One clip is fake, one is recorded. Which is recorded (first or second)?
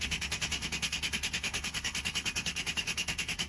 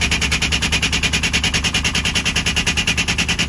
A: second